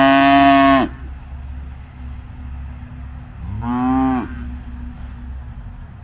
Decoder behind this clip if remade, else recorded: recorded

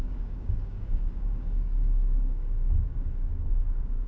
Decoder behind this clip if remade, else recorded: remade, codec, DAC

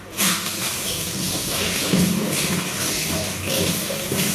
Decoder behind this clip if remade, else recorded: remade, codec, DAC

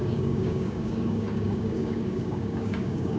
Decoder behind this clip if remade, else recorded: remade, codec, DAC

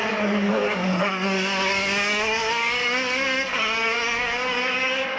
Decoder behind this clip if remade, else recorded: remade, codec, DAC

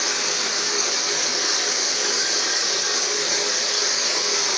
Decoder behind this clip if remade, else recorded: remade, codec, DAC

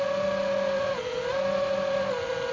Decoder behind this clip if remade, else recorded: recorded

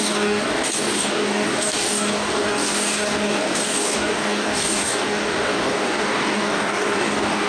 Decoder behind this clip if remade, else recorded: remade, codec, DAC